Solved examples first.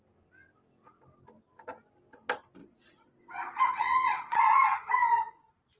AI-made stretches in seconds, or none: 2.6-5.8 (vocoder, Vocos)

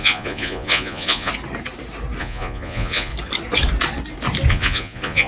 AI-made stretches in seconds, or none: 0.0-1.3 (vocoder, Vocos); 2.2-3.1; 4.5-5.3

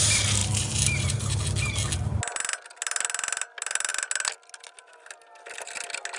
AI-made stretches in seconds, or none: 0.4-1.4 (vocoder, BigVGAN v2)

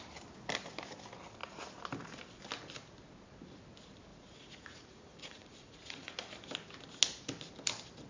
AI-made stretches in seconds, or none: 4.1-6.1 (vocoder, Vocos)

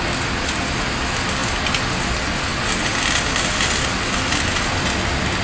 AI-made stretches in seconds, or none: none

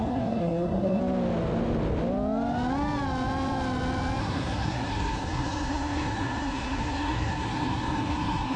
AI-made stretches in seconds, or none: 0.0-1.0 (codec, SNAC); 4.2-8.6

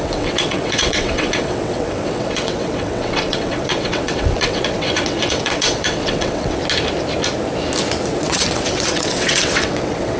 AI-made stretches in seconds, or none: 0.0-6.6 (vocoder, WaveNeXt); 8.2-10.2